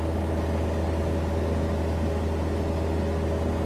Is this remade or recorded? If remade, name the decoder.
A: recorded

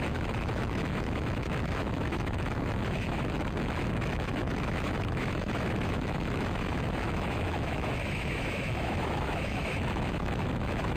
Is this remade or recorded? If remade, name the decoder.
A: remade, autoencoder, DAC-VAE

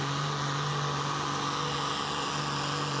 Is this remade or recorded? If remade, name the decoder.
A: recorded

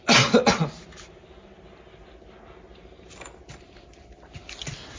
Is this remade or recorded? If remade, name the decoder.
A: recorded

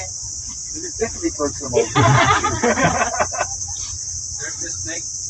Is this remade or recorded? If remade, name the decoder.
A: recorded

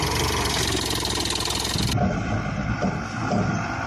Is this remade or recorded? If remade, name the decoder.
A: recorded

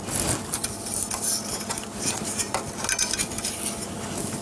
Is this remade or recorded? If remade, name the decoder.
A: recorded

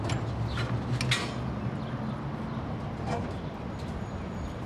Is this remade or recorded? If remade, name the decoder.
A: recorded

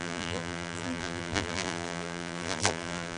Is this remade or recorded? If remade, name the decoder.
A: remade, vocoder, BigVGAN v2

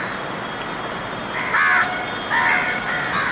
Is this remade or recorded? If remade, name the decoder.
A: recorded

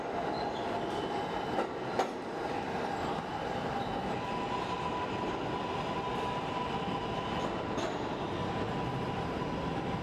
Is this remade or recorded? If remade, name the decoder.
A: recorded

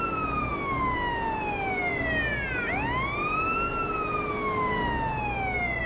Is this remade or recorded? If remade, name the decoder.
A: recorded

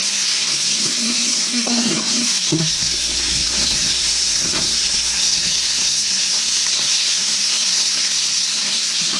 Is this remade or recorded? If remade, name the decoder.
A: remade, codec, SNAC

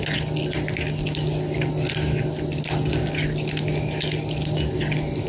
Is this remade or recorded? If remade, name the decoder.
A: recorded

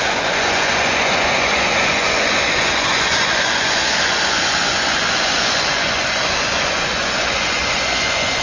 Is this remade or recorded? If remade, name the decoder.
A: remade, vocoder, Vocos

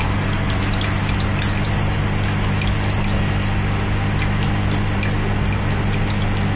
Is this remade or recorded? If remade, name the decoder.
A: recorded